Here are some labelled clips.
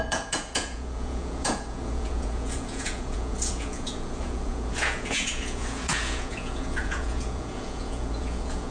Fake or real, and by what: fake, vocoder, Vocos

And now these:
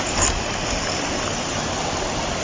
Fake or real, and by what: real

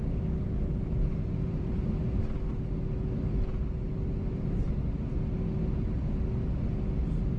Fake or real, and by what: real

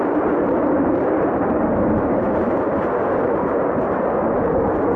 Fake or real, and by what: fake, vocoder, BigVGAN v2